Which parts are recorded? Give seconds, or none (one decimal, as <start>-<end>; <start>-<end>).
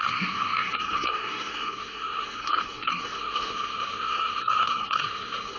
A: none